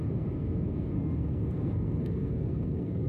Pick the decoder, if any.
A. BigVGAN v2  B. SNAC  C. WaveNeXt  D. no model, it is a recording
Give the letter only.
B